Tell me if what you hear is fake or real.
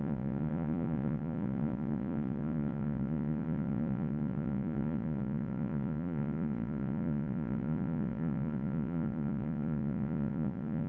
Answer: fake